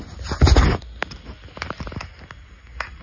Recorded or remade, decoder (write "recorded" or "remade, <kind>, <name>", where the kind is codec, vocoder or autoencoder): recorded